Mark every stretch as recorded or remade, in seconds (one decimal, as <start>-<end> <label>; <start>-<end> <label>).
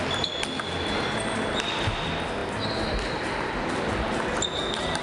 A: 0.0-5.0 recorded